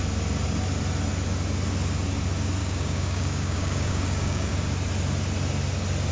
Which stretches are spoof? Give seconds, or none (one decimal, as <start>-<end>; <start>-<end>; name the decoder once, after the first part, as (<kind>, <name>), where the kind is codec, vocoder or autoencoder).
2.6-4.5 (codec, DAC)